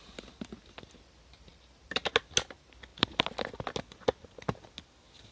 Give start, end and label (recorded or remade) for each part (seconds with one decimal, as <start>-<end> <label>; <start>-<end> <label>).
0.0-1.5 recorded; 1.5-2.1 remade; 2.1-5.3 recorded